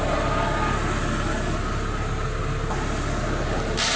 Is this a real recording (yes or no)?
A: yes